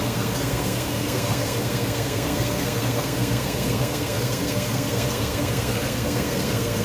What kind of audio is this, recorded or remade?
remade